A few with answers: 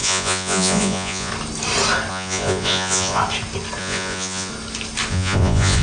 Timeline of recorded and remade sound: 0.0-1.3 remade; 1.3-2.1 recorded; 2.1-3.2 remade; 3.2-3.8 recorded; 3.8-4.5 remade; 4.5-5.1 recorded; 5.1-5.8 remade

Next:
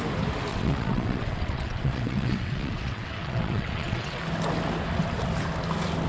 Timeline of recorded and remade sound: 0.0-0.5 recorded; 0.5-4.2 remade; 4.2-6.1 recorded